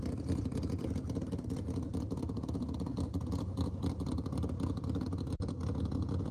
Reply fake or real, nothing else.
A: real